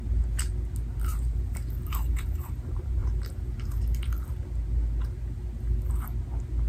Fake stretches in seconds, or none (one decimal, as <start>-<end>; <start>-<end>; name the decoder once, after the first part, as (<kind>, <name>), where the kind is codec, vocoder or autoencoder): 1.1-4.2 (vocoder, BigVGAN v2)